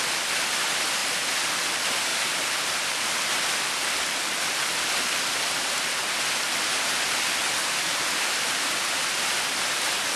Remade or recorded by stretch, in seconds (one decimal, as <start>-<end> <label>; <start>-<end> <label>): 0.0-2.1 recorded; 2.1-2.8 remade; 2.8-7.6 recorded; 7.6-10.2 remade